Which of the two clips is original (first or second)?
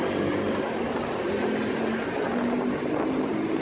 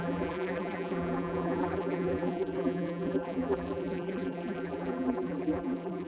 first